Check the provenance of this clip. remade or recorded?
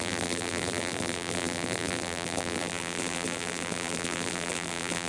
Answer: remade